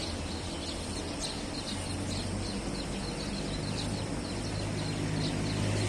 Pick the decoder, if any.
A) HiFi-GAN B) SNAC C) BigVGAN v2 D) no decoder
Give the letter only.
D